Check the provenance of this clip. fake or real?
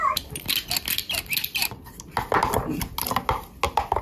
real